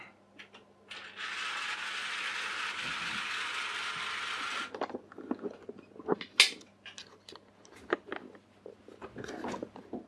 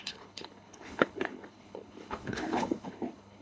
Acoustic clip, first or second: first